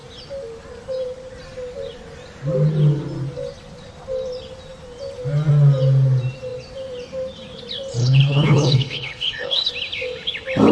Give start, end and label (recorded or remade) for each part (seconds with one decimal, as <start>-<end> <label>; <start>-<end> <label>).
0.0-8.0 recorded; 8.0-9.7 remade; 9.7-10.7 recorded